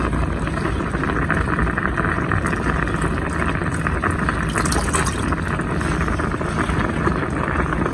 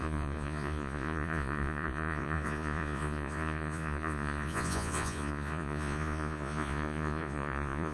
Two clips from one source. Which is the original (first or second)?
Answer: first